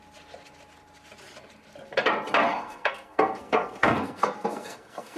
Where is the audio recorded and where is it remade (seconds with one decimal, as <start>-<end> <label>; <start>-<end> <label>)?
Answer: 0.0-2.5 recorded; 2.5-5.2 remade